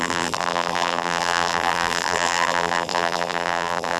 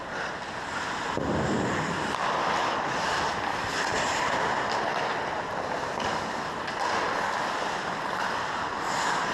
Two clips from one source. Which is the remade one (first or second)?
first